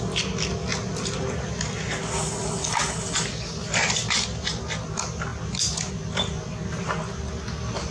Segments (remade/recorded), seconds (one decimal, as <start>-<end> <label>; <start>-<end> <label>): 0.0-7.9 recorded

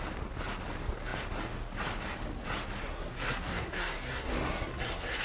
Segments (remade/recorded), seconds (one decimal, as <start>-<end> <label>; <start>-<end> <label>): 0.0-2.8 recorded; 2.8-5.2 remade

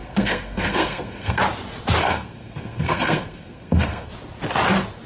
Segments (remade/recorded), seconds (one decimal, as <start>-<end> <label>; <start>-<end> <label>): 0.0-1.4 remade; 1.4-2.0 recorded; 2.0-4.1 remade; 4.1-5.1 recorded

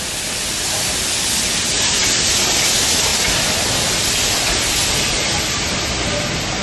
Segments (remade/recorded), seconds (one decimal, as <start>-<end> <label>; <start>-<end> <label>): 0.0-6.6 recorded

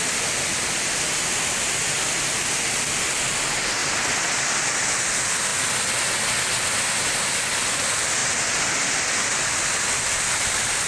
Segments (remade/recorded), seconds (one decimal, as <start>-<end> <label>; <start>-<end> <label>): 0.0-10.9 recorded

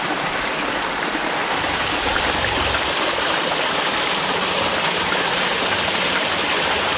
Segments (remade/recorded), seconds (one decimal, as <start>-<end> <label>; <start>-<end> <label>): 0.0-7.0 recorded

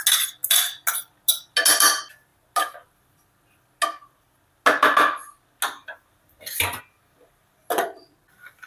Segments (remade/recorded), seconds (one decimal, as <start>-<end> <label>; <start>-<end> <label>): 0.0-8.7 recorded

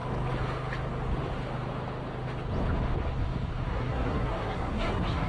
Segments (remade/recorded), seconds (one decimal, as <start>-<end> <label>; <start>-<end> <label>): 0.0-3.7 recorded; 3.7-5.3 remade